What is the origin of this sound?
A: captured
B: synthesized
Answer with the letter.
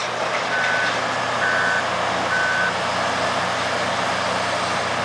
A